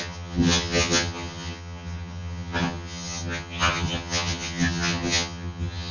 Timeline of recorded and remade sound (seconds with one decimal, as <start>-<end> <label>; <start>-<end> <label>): 0.0-5.9 remade